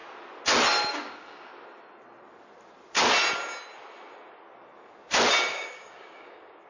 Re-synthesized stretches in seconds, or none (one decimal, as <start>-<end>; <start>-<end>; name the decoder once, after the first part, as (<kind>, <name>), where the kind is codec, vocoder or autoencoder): 0.9-1.5 (codec, DAC); 5.5-6.7